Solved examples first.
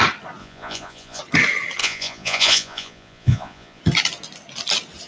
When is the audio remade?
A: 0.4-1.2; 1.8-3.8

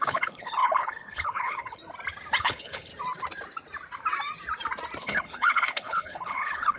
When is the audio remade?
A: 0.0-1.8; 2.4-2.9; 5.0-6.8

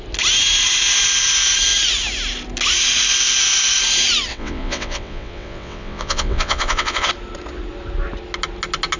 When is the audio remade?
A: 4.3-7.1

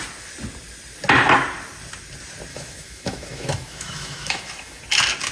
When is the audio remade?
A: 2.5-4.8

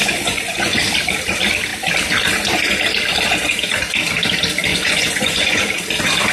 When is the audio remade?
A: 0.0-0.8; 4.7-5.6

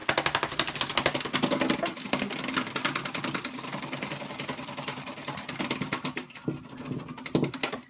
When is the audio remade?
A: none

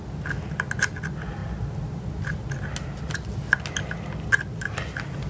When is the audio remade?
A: none

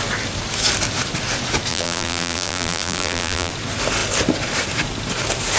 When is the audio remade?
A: 1.7-3.5